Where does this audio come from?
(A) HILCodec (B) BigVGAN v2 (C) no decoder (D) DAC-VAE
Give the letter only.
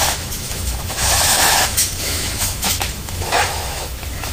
D